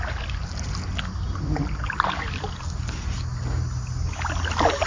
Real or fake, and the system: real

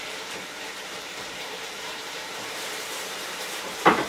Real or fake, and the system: fake, vocoder, BigVGAN v2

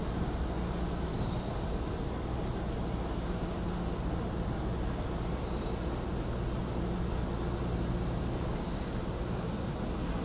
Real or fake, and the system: real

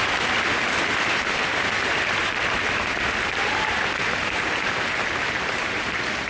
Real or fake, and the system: fake, vocoder, BigVGAN v2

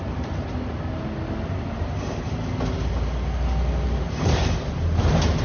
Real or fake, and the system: real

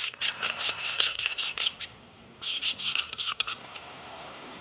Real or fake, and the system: fake, codec, SNAC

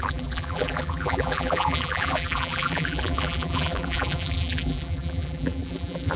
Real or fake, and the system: fake, vocoder, BigVGAN v2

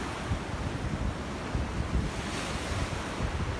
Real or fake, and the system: real